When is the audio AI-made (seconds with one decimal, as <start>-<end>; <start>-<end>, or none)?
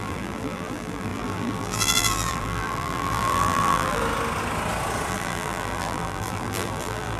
0.0-4.0; 5.1-7.2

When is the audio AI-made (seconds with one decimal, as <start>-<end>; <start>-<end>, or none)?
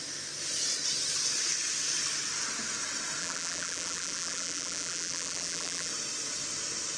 3.2-5.9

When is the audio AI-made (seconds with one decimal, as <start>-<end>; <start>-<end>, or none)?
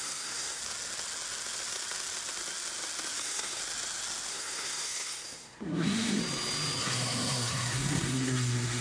0.0-0.6; 3.2-3.6; 4.3-6.2; 6.8-8.8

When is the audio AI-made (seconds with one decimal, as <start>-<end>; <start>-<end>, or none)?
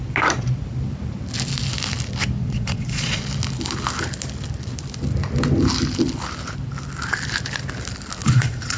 2.4-3.2; 8.2-8.8